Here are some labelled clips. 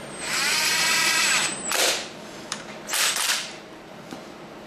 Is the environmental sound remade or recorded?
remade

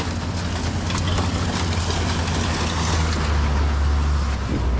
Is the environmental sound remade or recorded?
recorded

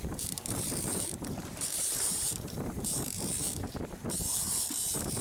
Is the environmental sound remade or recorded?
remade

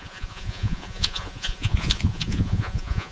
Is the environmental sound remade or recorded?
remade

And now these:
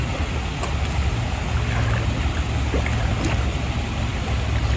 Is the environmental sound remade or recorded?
recorded